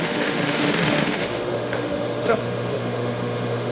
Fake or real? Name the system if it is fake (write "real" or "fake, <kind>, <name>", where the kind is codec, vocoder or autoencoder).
fake, autoencoder, DAC-VAE